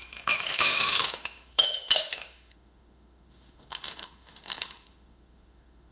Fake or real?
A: fake